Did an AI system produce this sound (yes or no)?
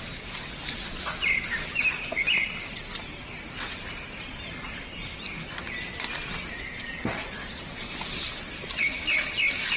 no